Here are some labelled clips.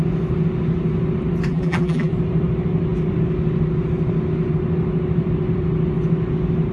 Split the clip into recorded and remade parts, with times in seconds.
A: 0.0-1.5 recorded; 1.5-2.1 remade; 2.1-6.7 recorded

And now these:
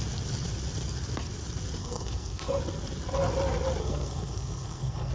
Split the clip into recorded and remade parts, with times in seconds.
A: 0.0-1.8 recorded; 1.8-2.6 remade; 2.6-3.8 recorded; 3.8-5.1 remade

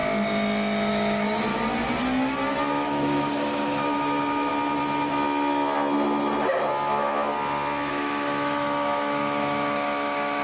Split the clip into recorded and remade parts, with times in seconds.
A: 0.0-0.9 recorded; 0.9-1.5 remade; 1.5-2.7 recorded; 2.7-4.5 remade; 4.5-7.9 recorded; 7.9-10.4 remade

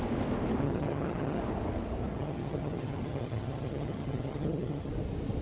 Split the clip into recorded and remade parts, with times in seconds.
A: 0.0-0.6 recorded; 0.6-1.4 remade; 1.4-2.1 recorded; 2.1-4.9 remade; 4.9-5.4 recorded

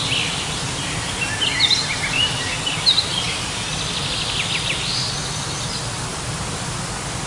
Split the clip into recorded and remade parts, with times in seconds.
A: 0.0-6.1 recorded; 6.1-6.7 remade; 6.7-7.3 recorded